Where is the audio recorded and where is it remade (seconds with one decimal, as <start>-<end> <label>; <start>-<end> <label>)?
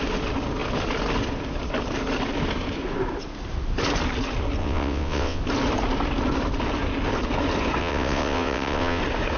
0.0-4.6 recorded; 4.6-5.4 remade; 5.4-7.8 recorded; 7.8-9.0 remade; 9.0-9.4 recorded